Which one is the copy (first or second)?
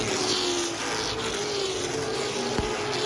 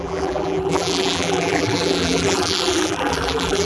second